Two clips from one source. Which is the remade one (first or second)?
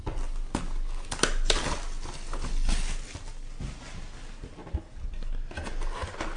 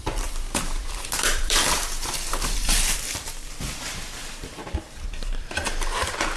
second